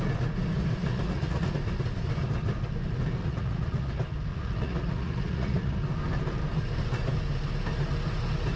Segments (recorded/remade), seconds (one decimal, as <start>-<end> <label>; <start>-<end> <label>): 0.0-0.8 recorded; 0.8-1.5 remade; 1.5-3.2 recorded; 3.2-3.9 remade; 3.9-4.3 recorded; 4.3-5.7 remade; 5.7-8.6 recorded